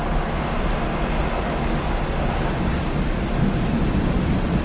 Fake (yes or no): no